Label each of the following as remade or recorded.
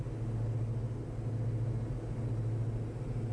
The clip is recorded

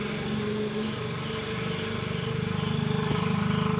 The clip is remade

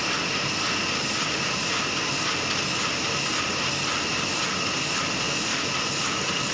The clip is recorded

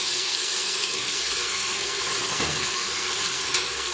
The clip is remade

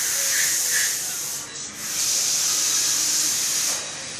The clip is recorded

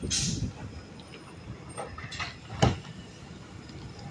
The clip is recorded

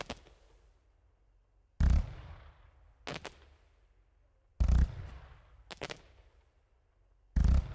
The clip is recorded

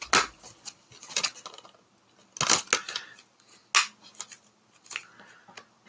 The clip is recorded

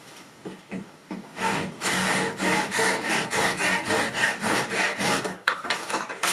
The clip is remade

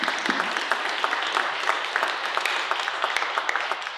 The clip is recorded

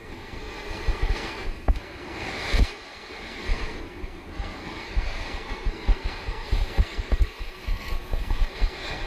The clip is remade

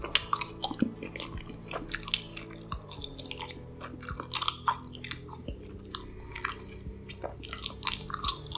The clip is recorded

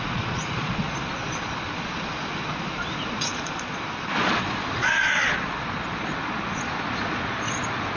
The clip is remade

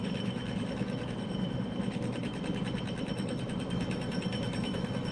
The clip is remade